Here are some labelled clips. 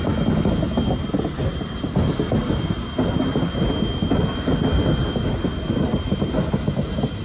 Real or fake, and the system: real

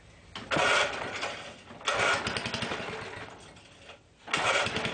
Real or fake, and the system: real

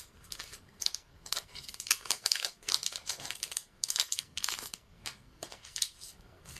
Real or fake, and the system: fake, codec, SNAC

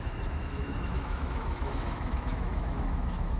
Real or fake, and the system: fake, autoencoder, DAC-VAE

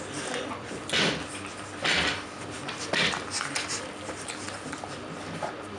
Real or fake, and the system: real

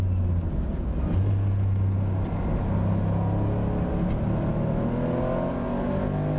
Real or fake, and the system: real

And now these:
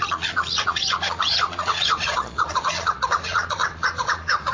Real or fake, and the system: fake, vocoder, Vocos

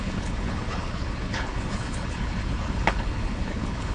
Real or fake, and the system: fake, codec, HILCodec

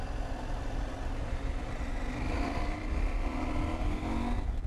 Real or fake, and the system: real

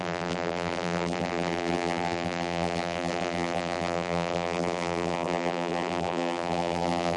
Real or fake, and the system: fake, vocoder, BigVGAN v2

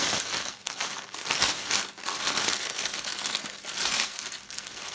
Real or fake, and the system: fake, codec, SNAC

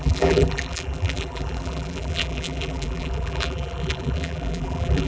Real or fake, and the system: fake, vocoder, BigVGAN v2